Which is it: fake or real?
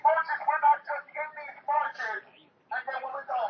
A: fake